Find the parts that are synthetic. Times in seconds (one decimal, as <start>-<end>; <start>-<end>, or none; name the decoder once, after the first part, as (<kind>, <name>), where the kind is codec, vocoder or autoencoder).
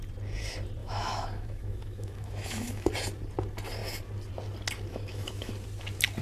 0.8-2.9 (autoencoder, DAC-VAE); 4.9-5.5